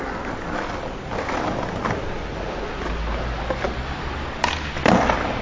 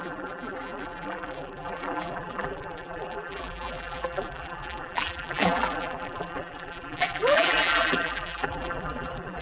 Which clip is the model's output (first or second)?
second